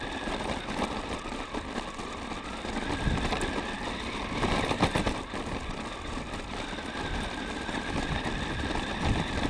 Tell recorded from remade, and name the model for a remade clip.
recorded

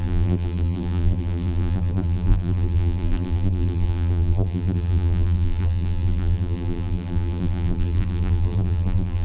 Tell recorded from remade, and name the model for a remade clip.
remade, vocoder, BigVGAN v2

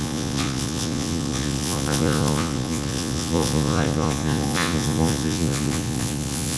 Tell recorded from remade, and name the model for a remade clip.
remade, vocoder, Vocos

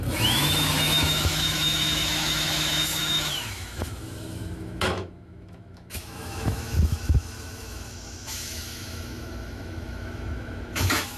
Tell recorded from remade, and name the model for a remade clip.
remade, autoencoder, DAC-VAE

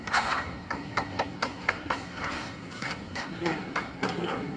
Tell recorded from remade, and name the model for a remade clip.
remade, codec, SNAC